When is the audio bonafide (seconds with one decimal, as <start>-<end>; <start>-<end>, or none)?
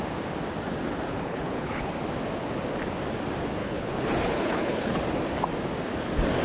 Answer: 0.0-1.1; 1.9-3.6; 5.0-6.4